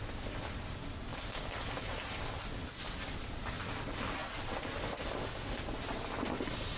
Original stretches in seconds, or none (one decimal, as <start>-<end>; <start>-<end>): 0.0-6.8